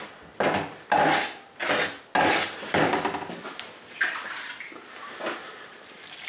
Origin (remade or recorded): recorded